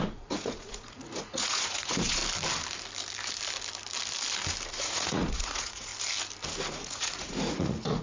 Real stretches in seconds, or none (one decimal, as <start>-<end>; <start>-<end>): 2.2-4.7; 5.9-6.7